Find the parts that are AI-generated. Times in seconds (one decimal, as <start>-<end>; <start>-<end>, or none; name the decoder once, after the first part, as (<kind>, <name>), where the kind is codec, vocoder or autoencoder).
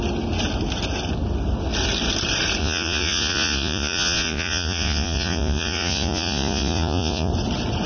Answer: 2.6-7.3 (vocoder, Vocos)